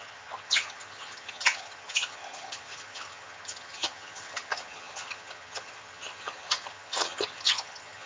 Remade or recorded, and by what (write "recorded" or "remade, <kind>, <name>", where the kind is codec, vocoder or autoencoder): remade, vocoder, HiFi-GAN